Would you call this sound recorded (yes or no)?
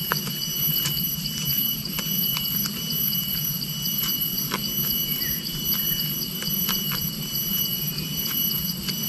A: no